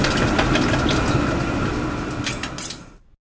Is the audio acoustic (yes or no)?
yes